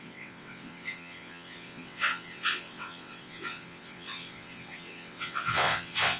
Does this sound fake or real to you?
fake